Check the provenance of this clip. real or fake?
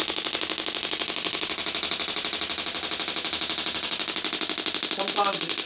real